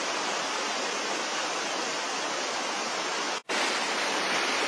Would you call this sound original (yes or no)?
yes